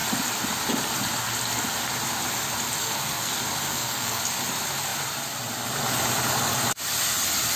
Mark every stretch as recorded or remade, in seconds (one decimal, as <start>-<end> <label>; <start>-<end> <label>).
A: 0.0-2.8 recorded; 2.8-3.3 remade; 3.3-3.7 recorded; 3.7-4.2 remade; 4.2-7.6 recorded